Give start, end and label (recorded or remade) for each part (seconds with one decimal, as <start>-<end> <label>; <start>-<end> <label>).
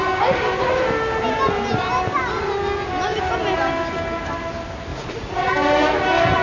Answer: 0.0-4.9 recorded; 4.9-5.5 remade; 5.5-6.4 recorded